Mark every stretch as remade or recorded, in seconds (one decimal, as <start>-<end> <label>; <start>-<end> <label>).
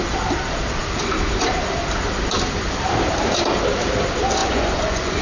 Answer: 0.0-4.4 recorded; 4.4-5.2 remade